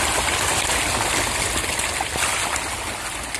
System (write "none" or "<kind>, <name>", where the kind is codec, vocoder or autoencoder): none